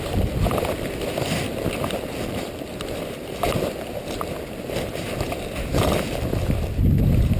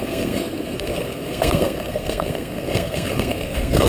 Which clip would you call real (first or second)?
first